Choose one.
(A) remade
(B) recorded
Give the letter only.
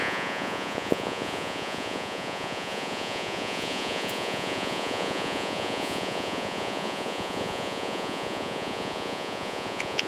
A